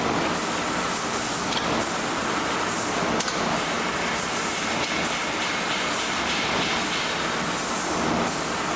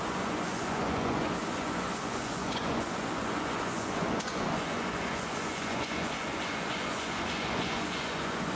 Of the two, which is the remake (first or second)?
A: second